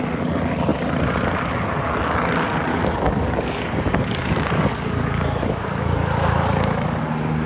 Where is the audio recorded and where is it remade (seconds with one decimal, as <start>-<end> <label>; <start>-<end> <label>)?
0.0-2.7 recorded; 2.7-7.5 remade